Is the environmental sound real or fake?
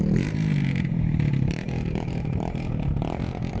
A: fake